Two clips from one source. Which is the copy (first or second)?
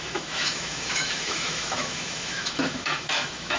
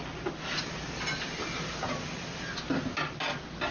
first